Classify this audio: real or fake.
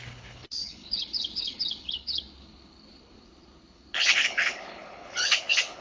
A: fake